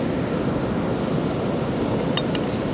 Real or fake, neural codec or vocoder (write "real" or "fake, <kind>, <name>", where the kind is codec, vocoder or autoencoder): real